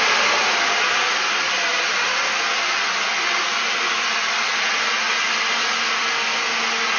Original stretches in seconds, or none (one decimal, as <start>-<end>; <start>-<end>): 0.0-7.0